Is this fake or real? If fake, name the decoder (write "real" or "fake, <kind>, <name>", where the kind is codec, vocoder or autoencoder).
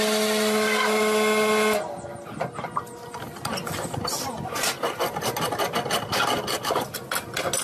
real